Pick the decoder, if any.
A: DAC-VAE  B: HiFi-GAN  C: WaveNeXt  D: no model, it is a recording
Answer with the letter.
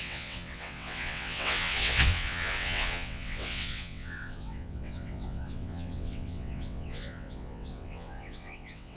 C